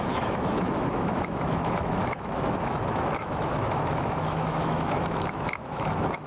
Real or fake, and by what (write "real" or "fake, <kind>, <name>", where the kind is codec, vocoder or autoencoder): fake, autoencoder, DAC-VAE